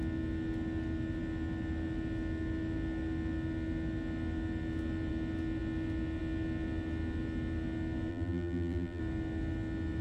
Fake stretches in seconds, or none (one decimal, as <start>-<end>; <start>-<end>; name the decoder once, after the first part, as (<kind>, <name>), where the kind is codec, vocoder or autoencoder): 8.1-9.0 (vocoder, BigVGAN v2)